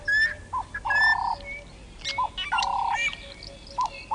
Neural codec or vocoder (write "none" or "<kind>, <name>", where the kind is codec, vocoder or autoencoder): none